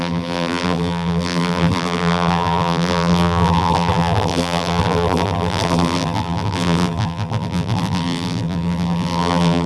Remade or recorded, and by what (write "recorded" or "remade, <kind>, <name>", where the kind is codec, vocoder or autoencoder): remade, vocoder, BigVGAN v2